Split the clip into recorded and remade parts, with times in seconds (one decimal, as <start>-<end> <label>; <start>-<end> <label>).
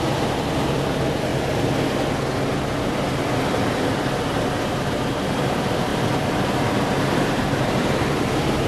0.0-1.3 remade; 1.3-3.8 recorded; 3.8-8.7 remade